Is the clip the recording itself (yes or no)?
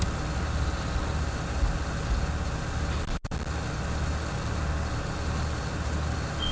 yes